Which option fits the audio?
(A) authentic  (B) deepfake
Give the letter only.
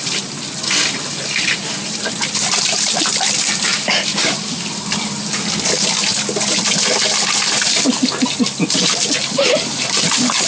A